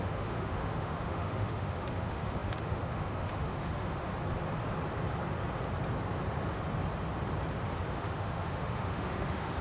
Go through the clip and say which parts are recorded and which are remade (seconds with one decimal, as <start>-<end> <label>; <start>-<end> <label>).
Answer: 0.0-4.1 remade; 4.1-7.9 recorded; 7.9-9.6 remade